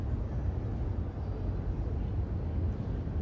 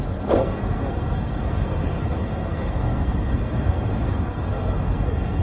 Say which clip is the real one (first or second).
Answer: first